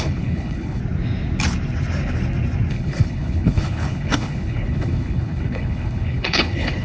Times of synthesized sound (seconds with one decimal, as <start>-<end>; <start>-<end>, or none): 0.0-0.8; 2.7-6.8